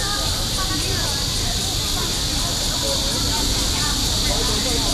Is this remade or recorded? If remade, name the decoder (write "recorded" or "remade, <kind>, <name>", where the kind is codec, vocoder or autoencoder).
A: recorded